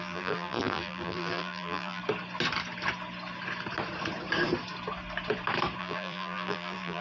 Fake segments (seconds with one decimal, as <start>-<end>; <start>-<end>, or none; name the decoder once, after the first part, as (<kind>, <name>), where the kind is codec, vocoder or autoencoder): 0.0-2.0 (vocoder, BigVGAN v2); 5.8-7.0